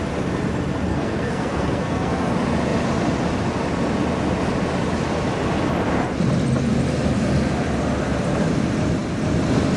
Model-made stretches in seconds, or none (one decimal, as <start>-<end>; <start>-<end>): 0.9-2.3